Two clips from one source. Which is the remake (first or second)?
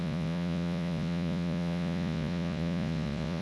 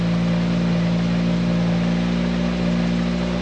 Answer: first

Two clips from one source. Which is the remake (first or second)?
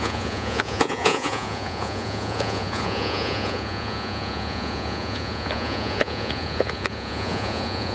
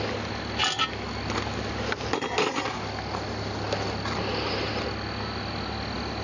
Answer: first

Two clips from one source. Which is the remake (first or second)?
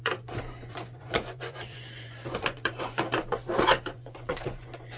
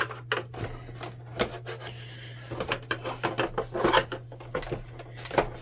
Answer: first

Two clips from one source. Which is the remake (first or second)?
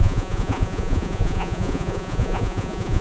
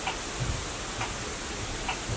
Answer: first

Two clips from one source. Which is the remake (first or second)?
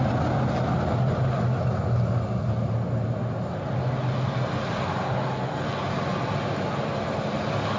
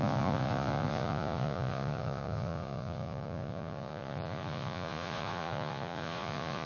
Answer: second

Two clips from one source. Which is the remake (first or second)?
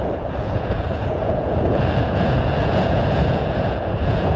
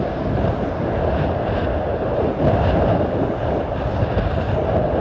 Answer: first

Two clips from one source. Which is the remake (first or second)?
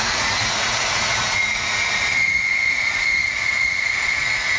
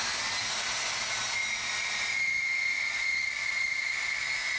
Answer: first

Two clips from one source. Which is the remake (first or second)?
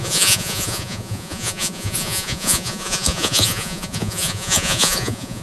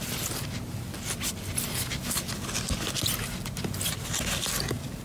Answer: first